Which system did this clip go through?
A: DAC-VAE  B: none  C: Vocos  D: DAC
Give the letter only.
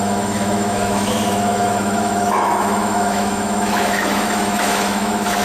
A